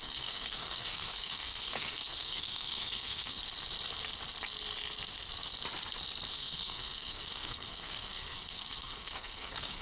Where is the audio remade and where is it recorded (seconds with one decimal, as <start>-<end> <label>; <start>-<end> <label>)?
0.0-3.4 remade; 3.4-6.3 recorded; 6.3-9.8 remade